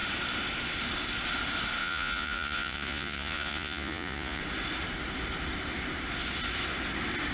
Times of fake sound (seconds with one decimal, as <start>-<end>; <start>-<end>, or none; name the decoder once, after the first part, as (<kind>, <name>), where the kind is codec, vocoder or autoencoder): 1.8-4.4 (vocoder, Vocos)